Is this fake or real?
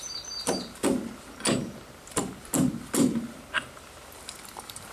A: real